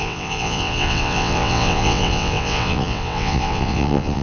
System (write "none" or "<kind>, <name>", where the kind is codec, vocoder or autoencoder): vocoder, WaveNeXt